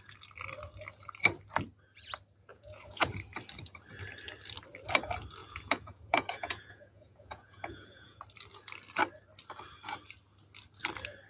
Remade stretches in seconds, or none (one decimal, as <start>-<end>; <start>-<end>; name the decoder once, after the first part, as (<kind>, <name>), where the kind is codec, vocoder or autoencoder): 2.5-3.1 (vocoder, Vocos); 5.4-8.2